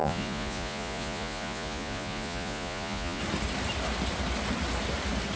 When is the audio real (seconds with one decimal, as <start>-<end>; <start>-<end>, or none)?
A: 3.2-5.4